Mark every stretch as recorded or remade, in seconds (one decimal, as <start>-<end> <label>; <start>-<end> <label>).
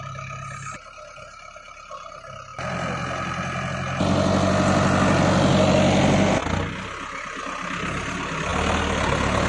0.0-9.5 recorded